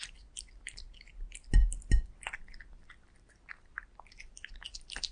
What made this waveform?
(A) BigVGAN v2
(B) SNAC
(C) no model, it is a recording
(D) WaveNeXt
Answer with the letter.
C